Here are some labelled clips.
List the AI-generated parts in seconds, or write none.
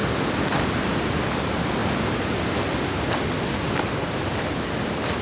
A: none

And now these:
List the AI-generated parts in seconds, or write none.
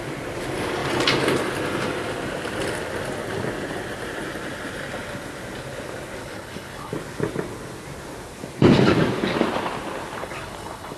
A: 6.2-6.9 (codec, HILCodec); 10.2-11.0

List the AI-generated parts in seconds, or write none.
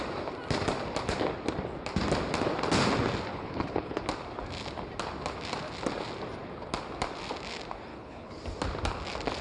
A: 3.3-4.0 (codec, HILCodec); 7.9-8.4